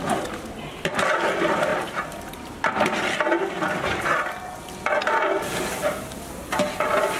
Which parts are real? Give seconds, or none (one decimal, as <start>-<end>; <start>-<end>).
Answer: 0.0-7.2